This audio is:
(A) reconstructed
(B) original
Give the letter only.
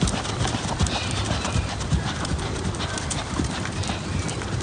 A